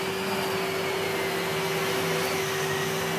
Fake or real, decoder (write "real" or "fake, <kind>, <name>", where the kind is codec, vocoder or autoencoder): real